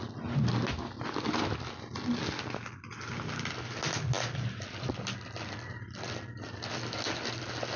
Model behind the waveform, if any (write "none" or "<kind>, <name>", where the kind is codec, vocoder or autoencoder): none